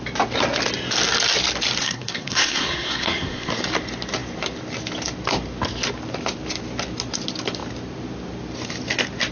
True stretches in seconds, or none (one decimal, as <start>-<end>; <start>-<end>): 0.0-1.8; 3.5-9.3